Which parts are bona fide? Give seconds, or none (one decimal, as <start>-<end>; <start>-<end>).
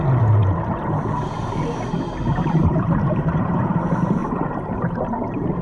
0.4-2.3; 4.2-4.8